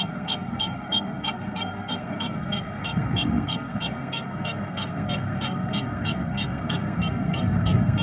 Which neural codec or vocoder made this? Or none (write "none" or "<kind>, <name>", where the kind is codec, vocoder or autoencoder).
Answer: codec, SNAC